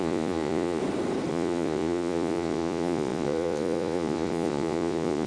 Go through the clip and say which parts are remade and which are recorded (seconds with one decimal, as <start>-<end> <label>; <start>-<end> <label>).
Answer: 0.0-0.8 remade; 0.8-1.3 recorded; 1.3-5.3 remade